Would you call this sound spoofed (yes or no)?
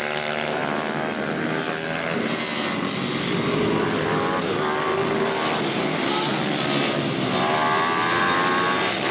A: no